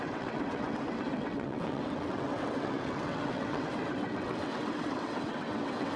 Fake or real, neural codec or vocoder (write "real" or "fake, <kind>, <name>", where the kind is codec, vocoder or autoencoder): fake, vocoder, WaveNeXt